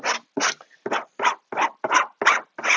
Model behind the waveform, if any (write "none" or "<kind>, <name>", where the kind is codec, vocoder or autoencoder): none